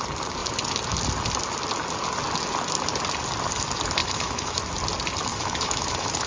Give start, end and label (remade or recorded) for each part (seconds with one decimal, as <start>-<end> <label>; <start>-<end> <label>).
0.0-4.0 recorded; 4.0-4.6 remade; 4.6-5.3 recorded; 5.3-6.3 remade